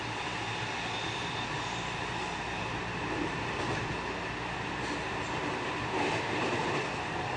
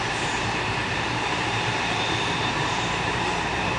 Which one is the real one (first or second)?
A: first